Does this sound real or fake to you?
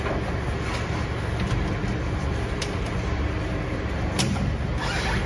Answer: real